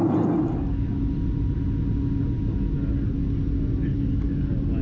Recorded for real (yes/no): yes